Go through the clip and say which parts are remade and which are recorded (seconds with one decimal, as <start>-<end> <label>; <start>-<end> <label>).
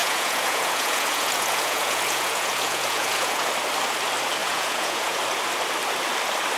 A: 0.0-3.5 remade; 3.5-4.4 recorded; 4.4-5.2 remade; 5.2-6.6 recorded